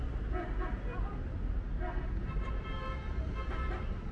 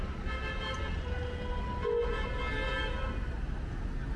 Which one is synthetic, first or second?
first